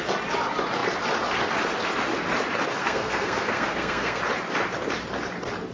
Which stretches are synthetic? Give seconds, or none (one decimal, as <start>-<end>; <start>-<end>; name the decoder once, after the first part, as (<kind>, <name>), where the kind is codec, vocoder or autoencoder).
2.8-4.2 (codec, SNAC)